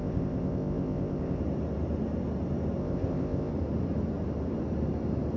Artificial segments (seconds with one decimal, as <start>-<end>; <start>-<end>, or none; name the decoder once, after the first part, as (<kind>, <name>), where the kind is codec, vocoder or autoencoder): 0.0-1.4 (codec, ZipCodec); 2.8-3.5